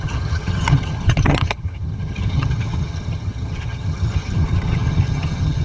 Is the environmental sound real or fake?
fake